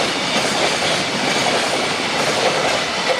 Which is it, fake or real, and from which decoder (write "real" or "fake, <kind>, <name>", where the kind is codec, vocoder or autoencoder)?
real